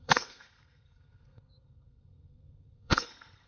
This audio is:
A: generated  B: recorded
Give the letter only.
A